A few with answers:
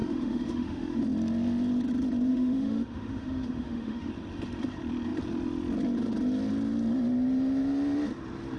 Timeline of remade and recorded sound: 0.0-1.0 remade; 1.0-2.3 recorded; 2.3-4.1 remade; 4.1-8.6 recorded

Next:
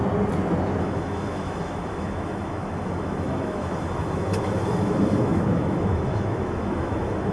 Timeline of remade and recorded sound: 0.0-0.8 recorded; 0.8-7.3 remade